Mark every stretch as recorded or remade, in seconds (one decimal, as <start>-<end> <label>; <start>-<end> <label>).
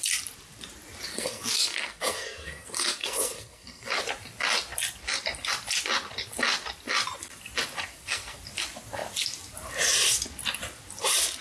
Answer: 0.0-1.1 recorded; 1.1-4.0 remade; 4.0-7.9 recorded; 7.9-8.4 remade; 8.4-11.4 recorded